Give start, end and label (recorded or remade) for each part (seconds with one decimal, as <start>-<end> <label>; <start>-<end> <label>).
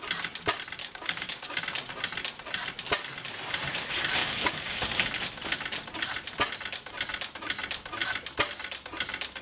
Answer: 0.0-0.8 recorded; 0.8-1.6 remade; 1.6-4.2 recorded; 4.2-5.1 remade; 5.1-9.4 recorded